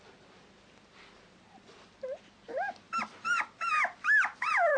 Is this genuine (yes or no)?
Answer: yes